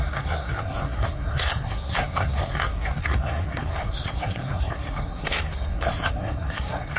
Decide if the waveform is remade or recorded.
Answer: remade